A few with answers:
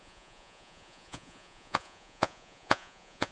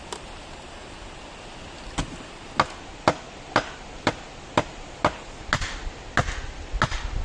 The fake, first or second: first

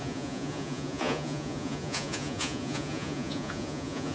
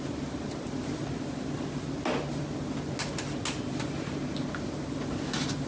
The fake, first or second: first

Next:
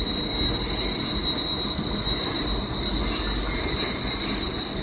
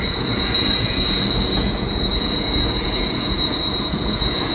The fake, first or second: second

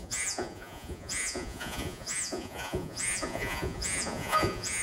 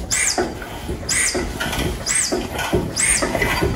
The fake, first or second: first